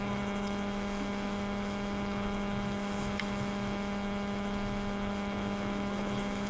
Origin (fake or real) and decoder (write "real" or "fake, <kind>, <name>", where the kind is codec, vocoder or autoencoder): fake, autoencoder, DAC-VAE